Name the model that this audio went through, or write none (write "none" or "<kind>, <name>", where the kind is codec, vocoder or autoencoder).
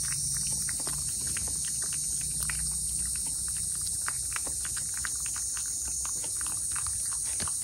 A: none